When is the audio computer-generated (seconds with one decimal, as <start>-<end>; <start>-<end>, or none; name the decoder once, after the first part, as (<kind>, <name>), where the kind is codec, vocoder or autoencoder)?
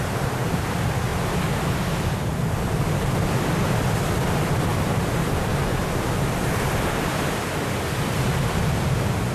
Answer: 0.0-1.1 (vocoder, BigVGAN v2); 2.2-9.3